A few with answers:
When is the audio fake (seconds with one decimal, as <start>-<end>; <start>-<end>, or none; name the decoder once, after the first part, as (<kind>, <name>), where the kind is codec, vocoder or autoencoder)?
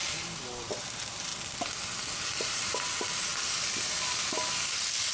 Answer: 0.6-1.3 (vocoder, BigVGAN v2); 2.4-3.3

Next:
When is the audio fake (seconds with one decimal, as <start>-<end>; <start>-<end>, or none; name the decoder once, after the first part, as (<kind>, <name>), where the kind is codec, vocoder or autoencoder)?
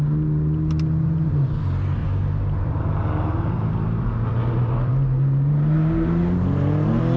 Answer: 2.0-4.9 (vocoder, BigVGAN v2)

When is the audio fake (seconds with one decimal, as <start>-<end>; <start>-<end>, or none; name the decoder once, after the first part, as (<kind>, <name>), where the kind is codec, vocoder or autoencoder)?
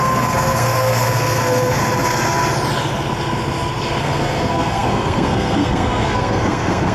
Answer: 0.0-1.8 (codec, SNAC); 4.0-6.9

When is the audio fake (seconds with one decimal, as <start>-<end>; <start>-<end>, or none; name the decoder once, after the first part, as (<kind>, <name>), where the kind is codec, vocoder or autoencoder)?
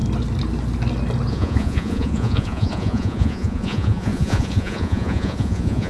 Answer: 1.3-5.9 (vocoder, Vocos)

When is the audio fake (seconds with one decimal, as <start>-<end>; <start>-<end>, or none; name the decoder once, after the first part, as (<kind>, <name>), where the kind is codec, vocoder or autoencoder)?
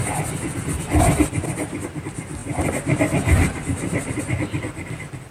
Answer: none